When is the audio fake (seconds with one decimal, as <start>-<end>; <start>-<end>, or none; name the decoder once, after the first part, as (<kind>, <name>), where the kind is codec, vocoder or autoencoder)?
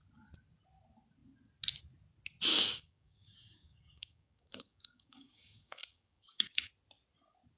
2.5-6.7 (codec, DAC)